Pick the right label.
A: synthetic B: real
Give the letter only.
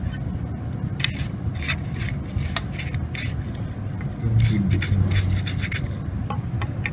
B